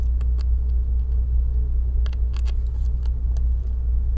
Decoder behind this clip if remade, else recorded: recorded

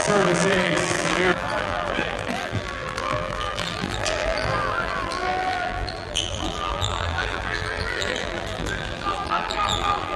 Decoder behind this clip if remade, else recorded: remade, vocoder, BigVGAN v2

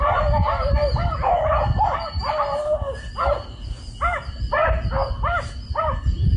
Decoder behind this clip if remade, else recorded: recorded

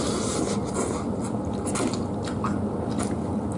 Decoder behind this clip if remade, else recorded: recorded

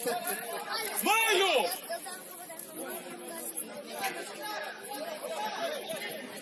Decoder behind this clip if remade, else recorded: recorded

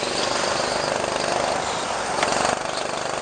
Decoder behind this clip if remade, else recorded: recorded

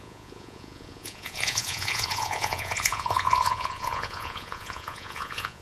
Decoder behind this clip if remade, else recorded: remade, vocoder, Vocos